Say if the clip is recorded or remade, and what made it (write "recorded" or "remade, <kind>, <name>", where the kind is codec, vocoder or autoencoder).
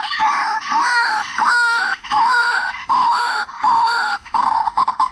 remade, autoencoder, DAC-VAE